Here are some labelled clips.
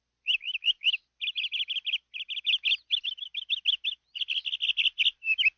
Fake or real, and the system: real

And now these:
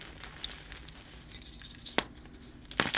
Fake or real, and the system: real